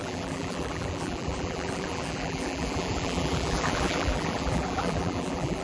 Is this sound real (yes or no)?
no